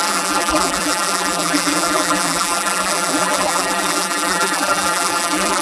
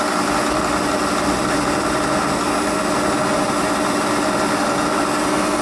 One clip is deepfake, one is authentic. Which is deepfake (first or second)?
first